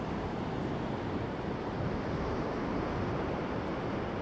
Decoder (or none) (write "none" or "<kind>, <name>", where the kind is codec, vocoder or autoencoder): none